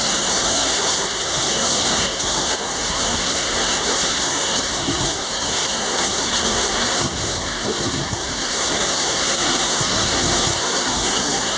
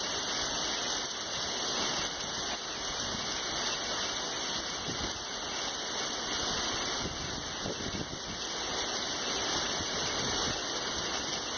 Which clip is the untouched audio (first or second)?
second